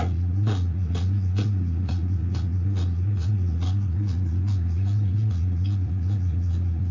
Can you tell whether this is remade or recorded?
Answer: remade